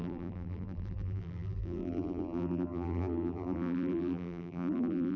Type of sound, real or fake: fake